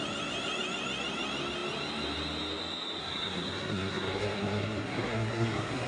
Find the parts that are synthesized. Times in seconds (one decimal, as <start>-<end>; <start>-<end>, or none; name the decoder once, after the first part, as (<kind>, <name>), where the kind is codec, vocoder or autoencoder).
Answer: 3.0-5.9 (codec, SNAC)